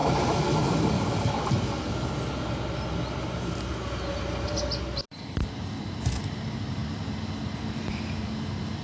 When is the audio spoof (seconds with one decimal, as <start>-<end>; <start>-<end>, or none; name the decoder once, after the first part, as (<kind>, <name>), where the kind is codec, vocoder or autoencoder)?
none